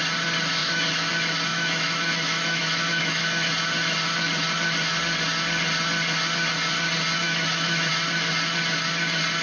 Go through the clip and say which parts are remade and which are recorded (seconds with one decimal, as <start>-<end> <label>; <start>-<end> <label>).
0.0-0.6 recorded; 0.6-1.1 remade; 1.1-1.5 recorded; 1.5-3.5 remade; 3.5-7.2 recorded; 7.2-7.9 remade; 7.9-9.4 recorded